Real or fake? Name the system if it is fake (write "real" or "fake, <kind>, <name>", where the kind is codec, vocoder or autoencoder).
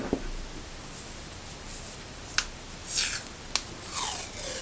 real